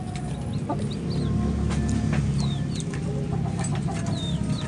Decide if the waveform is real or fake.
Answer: real